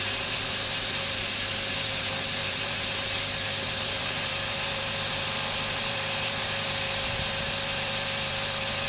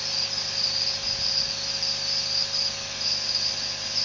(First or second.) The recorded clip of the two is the second